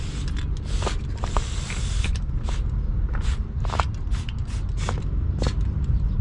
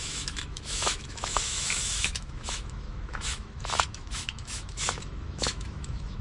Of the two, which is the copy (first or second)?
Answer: second